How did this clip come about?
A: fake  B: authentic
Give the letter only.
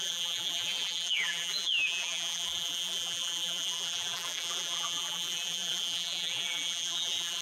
A